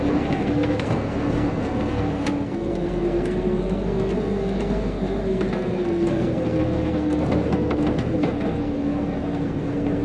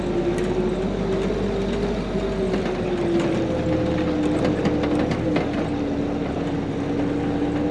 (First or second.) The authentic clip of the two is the second